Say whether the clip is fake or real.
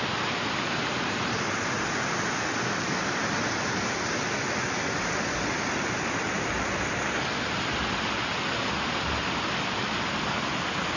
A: real